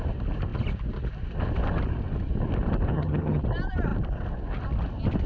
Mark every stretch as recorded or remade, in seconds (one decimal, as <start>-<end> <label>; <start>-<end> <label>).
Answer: 0.0-2.9 recorded; 2.9-3.4 remade; 3.4-5.3 recorded